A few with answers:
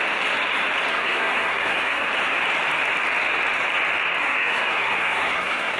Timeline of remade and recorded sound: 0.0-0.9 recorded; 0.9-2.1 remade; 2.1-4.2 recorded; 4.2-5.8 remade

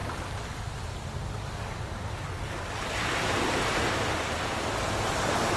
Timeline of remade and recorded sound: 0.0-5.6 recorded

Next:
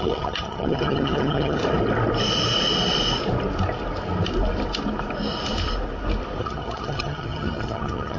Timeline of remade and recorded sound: 0.0-1.6 remade; 1.6-6.4 recorded; 6.4-8.2 remade

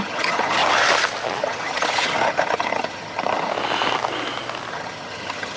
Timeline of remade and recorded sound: 0.0-0.6 remade; 0.6-1.4 recorded; 1.4-3.5 remade; 3.5-4.7 recorded; 4.7-5.6 remade